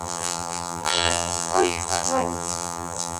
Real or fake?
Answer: fake